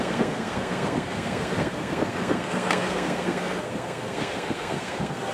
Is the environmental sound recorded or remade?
remade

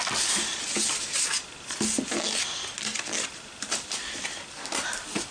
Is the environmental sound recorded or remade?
recorded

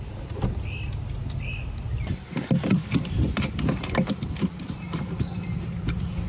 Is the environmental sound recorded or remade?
recorded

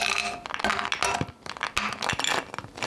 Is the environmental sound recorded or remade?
recorded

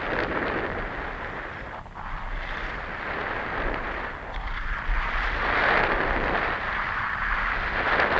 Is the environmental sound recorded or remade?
recorded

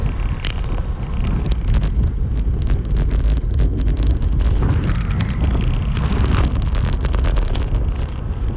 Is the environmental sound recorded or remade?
recorded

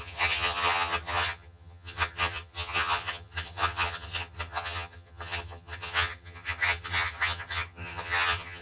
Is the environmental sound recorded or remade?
remade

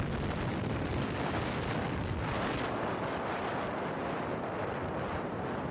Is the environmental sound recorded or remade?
recorded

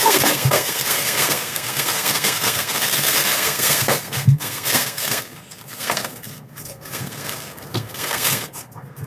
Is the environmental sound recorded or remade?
remade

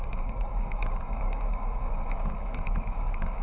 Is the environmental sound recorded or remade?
remade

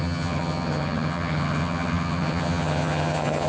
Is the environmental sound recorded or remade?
remade